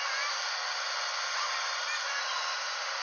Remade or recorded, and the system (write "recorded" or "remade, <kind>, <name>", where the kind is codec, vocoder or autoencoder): recorded